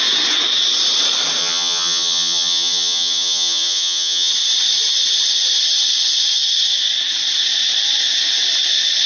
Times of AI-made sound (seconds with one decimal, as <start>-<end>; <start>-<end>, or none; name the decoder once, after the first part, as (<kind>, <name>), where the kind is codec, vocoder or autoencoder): 1.4-4.3 (vocoder, HiFi-GAN)